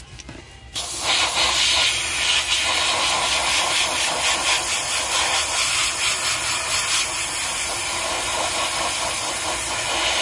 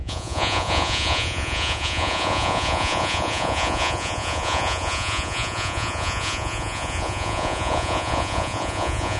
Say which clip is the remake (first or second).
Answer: second